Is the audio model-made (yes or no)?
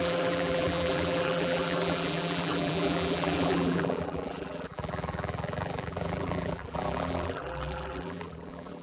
yes